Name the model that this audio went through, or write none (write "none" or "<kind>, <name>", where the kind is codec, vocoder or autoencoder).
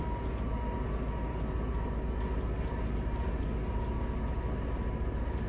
none